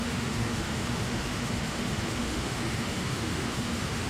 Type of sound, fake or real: fake